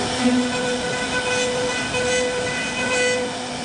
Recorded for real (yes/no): yes